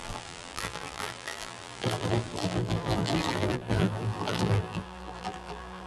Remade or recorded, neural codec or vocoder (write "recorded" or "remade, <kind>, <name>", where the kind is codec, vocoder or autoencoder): remade, vocoder, BigVGAN v2